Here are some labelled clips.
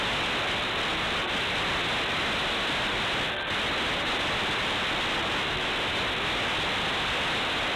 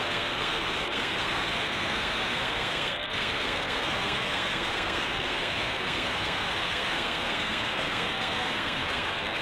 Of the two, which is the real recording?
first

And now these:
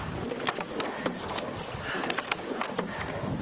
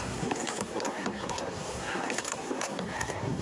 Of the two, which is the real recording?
first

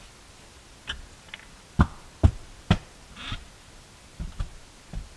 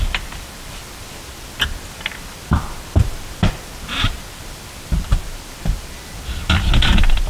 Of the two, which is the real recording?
first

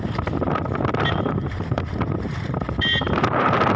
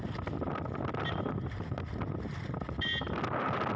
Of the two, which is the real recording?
second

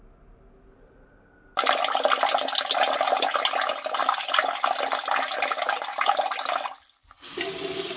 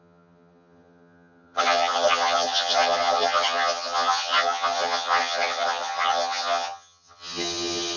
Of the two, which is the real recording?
first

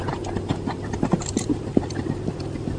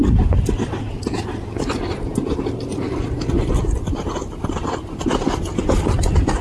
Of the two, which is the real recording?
second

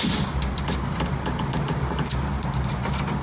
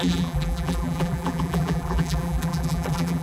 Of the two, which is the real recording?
first